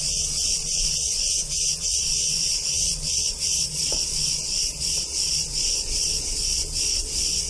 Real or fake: fake